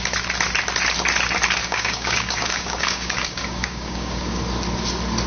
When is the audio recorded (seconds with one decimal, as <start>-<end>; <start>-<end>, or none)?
0.0-1.6; 4.4-5.3